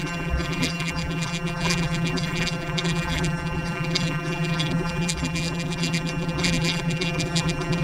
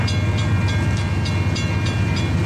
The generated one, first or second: first